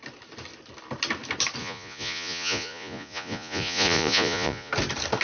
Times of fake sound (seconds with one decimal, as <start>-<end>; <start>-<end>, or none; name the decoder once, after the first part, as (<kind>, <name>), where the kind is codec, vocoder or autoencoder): 1.6-4.7 (vocoder, Vocos)